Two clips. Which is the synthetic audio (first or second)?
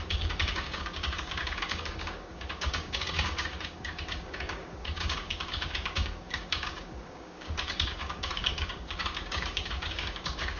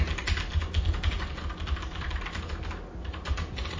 first